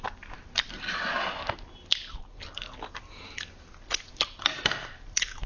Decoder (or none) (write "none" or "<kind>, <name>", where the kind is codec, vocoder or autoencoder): none